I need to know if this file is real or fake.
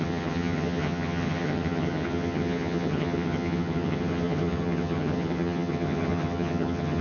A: fake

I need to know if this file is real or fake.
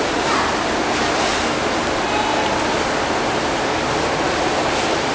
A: real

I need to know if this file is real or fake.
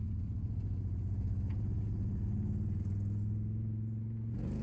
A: fake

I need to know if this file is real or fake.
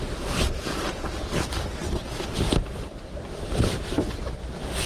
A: real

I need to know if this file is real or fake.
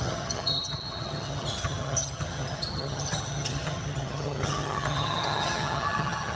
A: fake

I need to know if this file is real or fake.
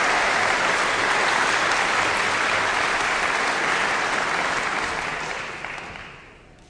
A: real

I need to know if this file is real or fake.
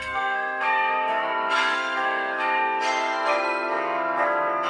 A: fake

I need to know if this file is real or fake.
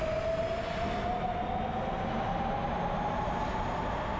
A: real